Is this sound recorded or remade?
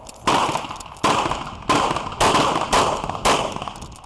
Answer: recorded